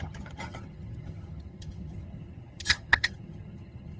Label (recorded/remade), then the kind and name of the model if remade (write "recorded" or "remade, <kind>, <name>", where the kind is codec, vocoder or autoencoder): remade, vocoder, HiFi-GAN